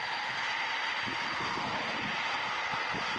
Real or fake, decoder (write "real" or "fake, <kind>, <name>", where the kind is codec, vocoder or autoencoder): real